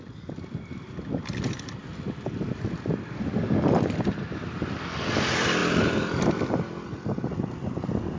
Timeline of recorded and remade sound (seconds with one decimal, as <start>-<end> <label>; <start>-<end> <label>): 0.0-8.2 recorded

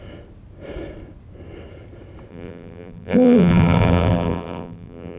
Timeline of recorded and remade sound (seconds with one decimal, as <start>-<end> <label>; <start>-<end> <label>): 0.0-2.3 recorded; 2.3-5.2 remade

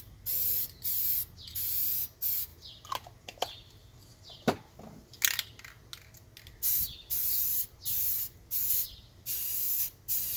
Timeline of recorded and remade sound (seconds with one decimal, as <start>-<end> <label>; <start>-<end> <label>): 0.0-10.4 recorded

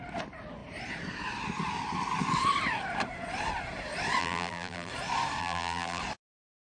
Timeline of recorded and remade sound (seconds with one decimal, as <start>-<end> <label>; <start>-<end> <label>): 0.0-4.2 recorded; 4.2-4.9 remade; 4.9-5.4 recorded; 5.4-6.0 remade; 6.0-6.6 recorded